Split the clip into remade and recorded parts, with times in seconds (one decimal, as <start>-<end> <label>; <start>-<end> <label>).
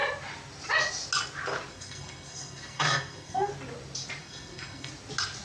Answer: 0.0-1.7 recorded; 1.7-3.5 remade; 3.5-4.2 recorded; 4.2-4.9 remade; 4.9-5.4 recorded